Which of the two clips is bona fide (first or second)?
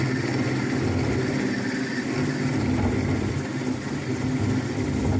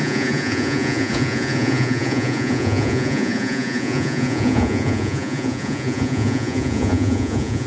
first